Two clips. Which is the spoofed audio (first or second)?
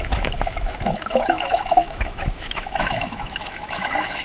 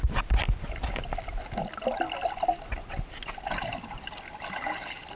first